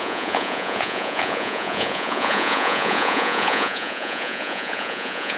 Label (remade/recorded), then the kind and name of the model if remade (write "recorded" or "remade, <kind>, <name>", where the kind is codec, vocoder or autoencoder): remade, vocoder, Vocos